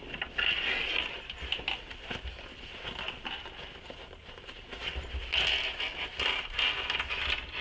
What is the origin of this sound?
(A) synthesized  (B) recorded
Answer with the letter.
B